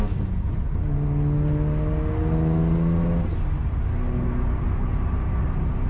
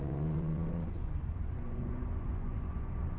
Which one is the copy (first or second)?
second